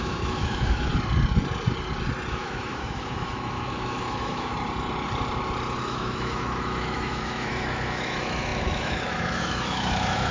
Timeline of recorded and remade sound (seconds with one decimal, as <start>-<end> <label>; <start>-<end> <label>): 0.0-0.9 remade; 0.9-2.3 recorded; 2.3-4.5 remade; 4.5-5.8 recorded; 5.8-10.3 remade